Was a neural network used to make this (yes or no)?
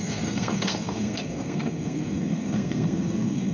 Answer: yes